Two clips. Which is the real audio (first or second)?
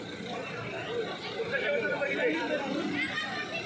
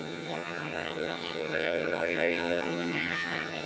first